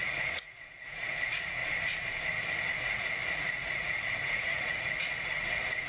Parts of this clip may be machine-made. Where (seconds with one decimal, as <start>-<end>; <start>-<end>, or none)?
0.0-1.6; 2.8-5.9